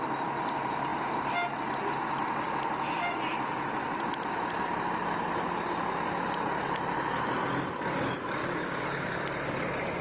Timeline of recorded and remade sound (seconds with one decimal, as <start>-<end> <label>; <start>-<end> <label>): 0.0-8.4 recorded; 8.4-9.2 remade; 9.2-10.0 recorded